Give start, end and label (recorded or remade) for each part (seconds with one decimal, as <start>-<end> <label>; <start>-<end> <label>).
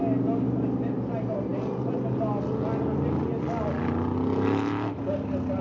0.0-5.6 recorded